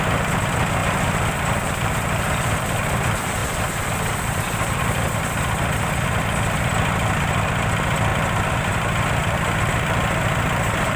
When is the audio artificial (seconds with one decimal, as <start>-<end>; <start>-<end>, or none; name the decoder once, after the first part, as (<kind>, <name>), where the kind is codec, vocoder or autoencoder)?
0.8-2.6 (vocoder, BigVGAN v2); 3.4-4.6